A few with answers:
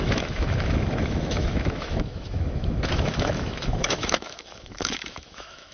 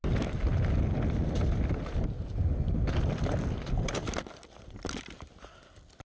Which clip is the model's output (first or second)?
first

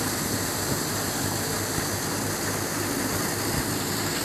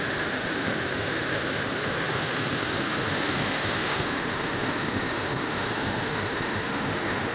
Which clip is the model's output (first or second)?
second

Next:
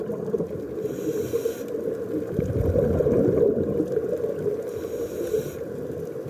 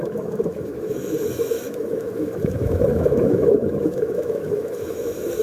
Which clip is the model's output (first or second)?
second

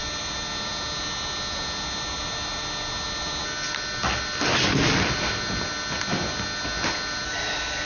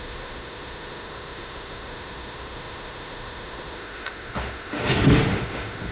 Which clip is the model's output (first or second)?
second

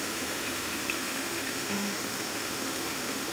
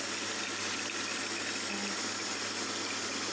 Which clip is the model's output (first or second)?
first